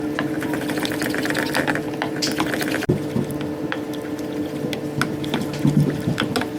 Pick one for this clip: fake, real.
real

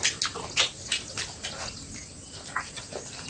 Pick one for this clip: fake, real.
real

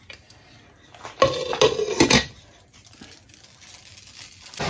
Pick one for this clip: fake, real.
real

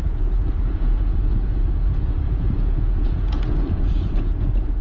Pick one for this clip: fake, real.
fake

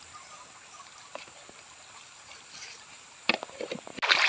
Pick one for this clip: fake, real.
real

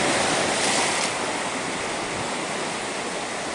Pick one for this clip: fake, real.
real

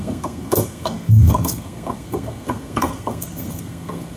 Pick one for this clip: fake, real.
fake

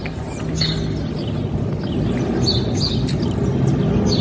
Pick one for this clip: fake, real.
real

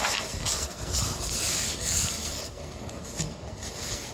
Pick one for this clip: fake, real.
fake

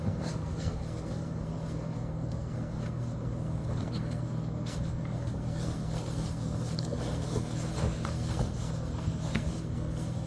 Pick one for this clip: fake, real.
fake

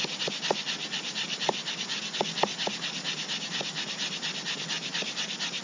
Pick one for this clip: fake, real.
real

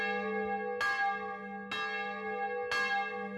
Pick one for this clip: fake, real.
real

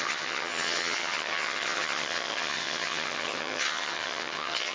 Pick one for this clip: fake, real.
fake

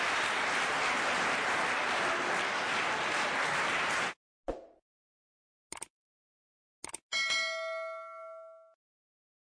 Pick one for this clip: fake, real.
real